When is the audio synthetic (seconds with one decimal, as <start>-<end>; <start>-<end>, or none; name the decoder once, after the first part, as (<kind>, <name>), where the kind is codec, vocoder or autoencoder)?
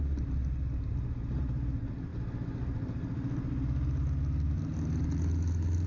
none